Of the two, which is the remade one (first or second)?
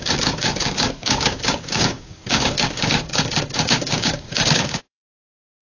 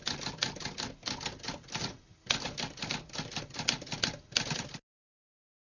first